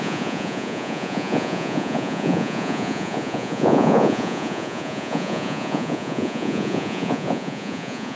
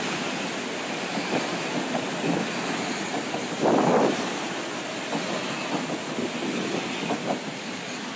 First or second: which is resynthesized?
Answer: first